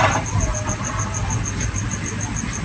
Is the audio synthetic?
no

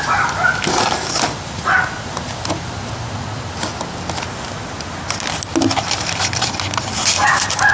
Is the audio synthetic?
no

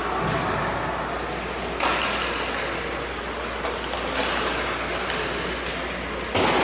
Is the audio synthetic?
no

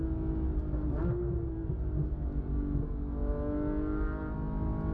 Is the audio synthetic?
no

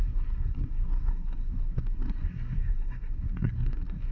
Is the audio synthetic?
yes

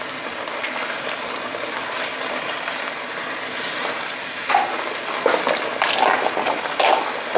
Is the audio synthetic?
no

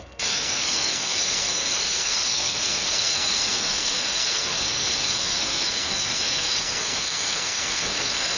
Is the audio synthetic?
yes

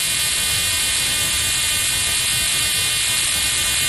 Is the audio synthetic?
no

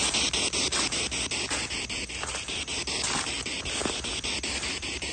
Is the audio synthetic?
no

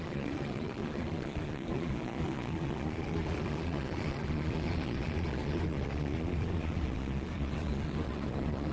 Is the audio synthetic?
yes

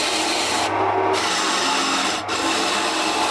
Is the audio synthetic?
no